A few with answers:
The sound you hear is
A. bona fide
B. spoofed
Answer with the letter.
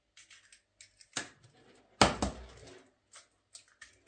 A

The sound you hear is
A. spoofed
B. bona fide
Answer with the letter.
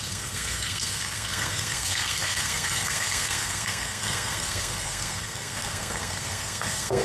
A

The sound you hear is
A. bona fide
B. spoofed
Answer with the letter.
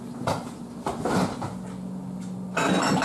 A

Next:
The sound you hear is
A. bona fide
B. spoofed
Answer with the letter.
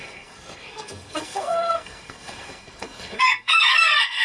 B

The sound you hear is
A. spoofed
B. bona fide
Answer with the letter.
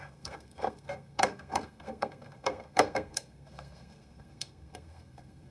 A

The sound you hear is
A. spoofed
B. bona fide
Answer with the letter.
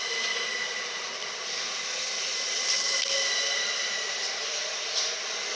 B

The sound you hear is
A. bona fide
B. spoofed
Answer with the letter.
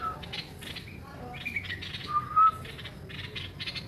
A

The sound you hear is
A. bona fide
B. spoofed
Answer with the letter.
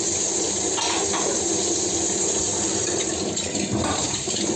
A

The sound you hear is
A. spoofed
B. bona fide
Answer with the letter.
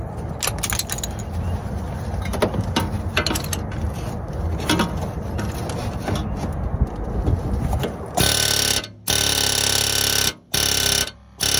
B